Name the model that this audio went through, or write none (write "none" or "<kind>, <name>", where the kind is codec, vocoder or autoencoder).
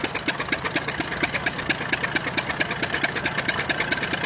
none